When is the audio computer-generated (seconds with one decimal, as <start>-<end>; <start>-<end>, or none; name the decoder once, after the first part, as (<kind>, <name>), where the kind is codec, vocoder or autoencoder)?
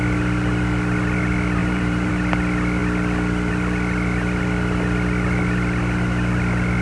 1.6-2.1 (vocoder, BigVGAN v2)